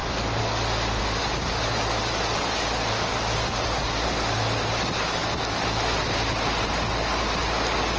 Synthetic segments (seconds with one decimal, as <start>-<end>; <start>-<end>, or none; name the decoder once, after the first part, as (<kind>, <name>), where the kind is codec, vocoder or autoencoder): none